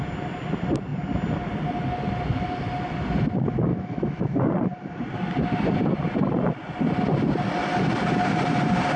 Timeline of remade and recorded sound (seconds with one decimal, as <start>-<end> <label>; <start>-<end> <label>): 0.0-3.7 recorded; 3.7-4.5 remade; 4.5-9.0 recorded